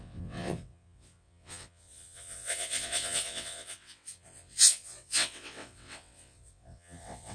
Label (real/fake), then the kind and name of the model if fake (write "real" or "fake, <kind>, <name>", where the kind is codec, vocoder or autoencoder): fake, vocoder, WaveNeXt